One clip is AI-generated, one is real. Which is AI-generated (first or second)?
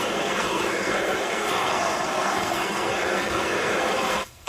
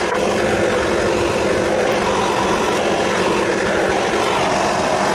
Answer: first